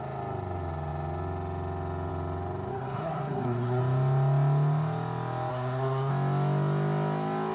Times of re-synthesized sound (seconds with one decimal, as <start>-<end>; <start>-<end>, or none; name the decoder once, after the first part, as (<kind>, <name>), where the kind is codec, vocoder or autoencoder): 2.7-3.8 (codec, SNAC); 5.5-6.1